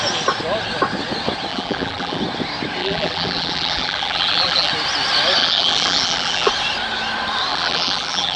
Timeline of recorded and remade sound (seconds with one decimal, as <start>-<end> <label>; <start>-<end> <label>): 0.0-1.5 recorded; 1.5-2.2 remade; 2.2-2.8 recorded; 2.8-4.7 remade; 4.7-5.4 recorded; 5.4-6.5 remade; 6.5-7.5 recorded; 7.5-8.4 remade